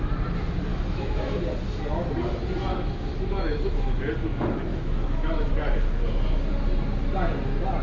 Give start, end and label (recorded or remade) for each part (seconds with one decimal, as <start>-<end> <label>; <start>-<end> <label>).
0.0-0.7 recorded; 0.7-1.4 remade; 1.4-2.7 recorded; 2.7-4.0 remade; 4.0-4.7 recorded; 4.7-5.5 remade; 5.5-7.8 recorded